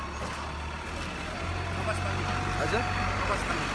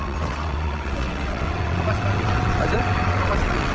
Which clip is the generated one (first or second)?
second